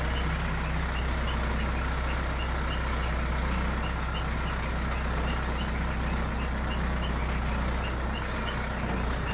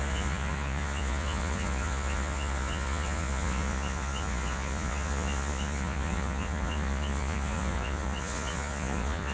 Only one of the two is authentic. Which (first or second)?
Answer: first